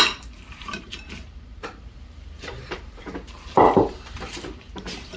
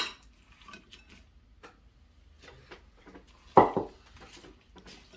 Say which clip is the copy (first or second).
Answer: first